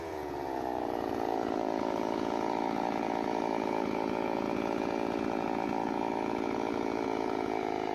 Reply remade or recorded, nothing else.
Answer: remade